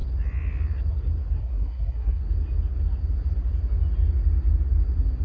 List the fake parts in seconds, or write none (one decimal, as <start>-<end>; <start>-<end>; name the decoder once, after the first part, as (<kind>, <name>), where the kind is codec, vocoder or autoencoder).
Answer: 1.4-2.2 (codec, SNAC)

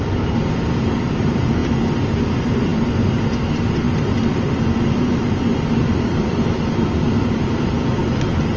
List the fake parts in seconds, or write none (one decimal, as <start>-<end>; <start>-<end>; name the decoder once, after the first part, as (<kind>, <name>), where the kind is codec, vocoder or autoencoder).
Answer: none